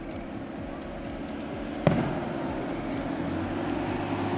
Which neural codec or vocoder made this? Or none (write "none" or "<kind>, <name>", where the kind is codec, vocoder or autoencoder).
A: none